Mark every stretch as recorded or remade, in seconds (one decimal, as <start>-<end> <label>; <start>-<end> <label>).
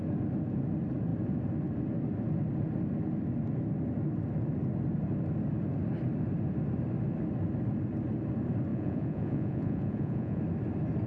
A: 0.0-8.7 recorded; 8.7-10.4 remade; 10.4-11.1 recorded